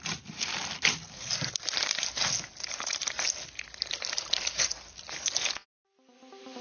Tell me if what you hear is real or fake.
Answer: real